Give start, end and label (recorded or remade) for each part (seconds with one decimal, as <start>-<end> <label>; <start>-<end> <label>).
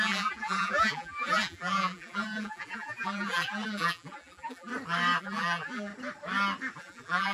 0.0-4.7 remade; 4.7-5.2 recorded; 5.2-5.9 remade; 5.9-6.8 recorded; 6.8-7.3 remade